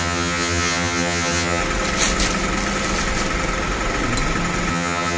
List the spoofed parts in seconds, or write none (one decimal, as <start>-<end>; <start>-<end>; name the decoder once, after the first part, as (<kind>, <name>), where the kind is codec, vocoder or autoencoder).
0.0-1.6 (vocoder, HiFi-GAN); 4.7-5.2